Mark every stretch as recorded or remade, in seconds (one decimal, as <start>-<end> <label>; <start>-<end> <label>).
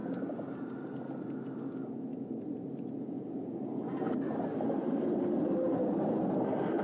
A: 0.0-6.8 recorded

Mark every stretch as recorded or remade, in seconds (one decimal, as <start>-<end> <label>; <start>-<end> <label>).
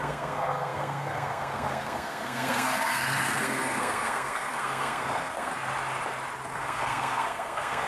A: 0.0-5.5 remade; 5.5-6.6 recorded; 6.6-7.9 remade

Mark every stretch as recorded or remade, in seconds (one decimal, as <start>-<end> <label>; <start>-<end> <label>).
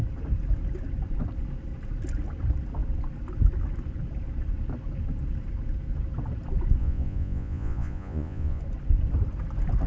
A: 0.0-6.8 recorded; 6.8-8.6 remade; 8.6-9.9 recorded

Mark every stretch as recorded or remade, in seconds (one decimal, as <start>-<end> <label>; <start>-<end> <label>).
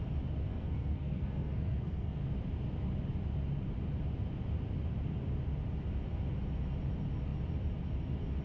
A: 0.0-0.5 recorded; 0.5-2.2 remade; 2.2-8.4 recorded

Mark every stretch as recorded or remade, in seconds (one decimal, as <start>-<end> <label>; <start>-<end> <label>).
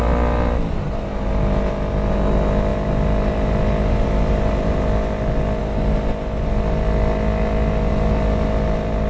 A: 0.0-9.1 recorded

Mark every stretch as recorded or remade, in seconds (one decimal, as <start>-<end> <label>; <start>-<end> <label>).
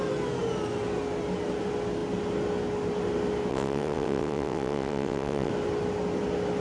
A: 0.0-3.5 recorded; 3.5-5.5 remade; 5.5-6.6 recorded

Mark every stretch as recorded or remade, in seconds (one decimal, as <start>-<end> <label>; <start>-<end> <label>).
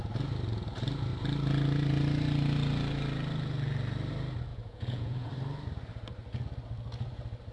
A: 0.0-4.5 recorded; 4.5-5.3 remade; 5.3-7.5 recorded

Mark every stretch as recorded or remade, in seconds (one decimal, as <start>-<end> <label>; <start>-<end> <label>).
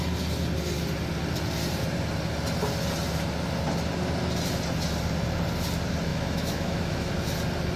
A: 0.0-6.1 recorded; 6.1-7.1 remade; 7.1-7.8 recorded